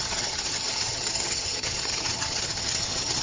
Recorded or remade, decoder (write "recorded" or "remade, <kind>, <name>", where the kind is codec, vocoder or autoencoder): remade, vocoder, HiFi-GAN